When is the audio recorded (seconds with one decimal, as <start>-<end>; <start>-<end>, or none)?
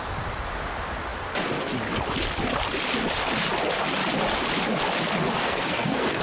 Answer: 0.0-5.4